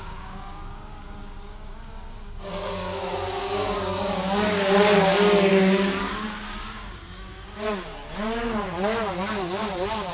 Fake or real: fake